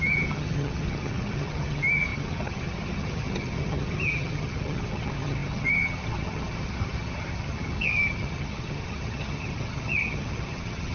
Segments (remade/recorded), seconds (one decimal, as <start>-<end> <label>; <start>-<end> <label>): 0.0-10.9 remade